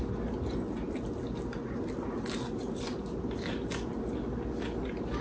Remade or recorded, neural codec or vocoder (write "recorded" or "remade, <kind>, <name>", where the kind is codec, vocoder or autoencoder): recorded